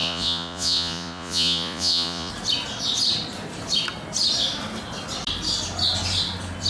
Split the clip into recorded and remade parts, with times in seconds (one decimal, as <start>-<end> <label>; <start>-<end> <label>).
0.0-2.3 remade; 2.3-6.7 recorded